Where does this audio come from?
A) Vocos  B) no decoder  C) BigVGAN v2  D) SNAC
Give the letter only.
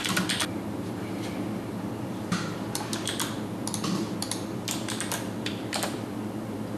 C